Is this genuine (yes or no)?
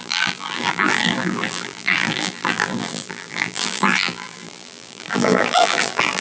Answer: no